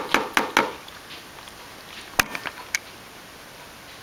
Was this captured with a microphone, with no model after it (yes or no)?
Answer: yes